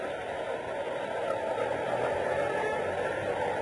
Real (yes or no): no